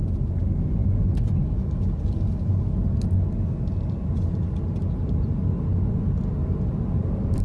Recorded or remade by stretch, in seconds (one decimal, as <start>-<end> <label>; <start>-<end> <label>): 0.0-7.4 recorded